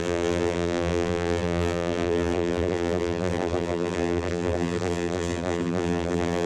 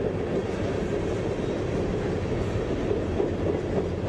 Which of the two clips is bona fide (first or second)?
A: second